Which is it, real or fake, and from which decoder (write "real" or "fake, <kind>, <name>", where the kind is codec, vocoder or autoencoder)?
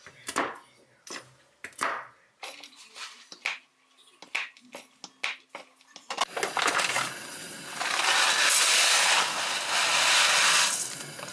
real